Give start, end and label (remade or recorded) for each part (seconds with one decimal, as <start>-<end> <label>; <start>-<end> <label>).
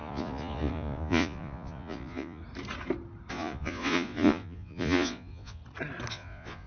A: 0.0-2.4 remade; 2.4-3.3 recorded; 3.3-5.6 remade; 5.6-6.1 recorded; 6.1-6.7 remade